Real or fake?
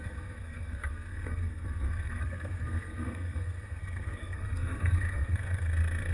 fake